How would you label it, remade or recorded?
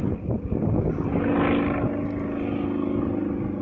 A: recorded